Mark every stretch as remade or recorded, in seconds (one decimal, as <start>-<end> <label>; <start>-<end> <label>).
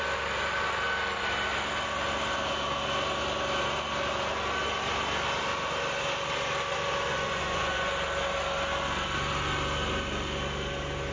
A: 0.0-7.1 recorded; 7.1-7.9 remade; 7.9-11.1 recorded